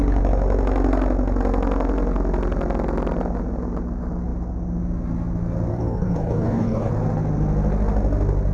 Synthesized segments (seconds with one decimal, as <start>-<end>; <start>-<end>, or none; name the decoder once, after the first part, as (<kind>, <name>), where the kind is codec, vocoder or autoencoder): 5.7-6.9 (codec, DAC)